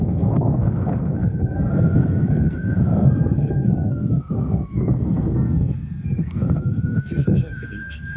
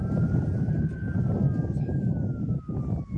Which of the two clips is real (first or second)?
second